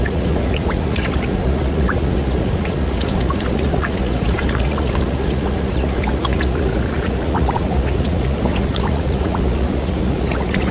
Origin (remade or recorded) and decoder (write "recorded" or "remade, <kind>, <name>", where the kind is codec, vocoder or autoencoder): remade, vocoder, Vocos